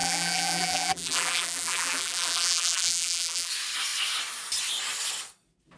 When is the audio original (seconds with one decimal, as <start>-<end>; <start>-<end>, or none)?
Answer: 3.5-5.8